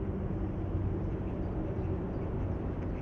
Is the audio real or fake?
real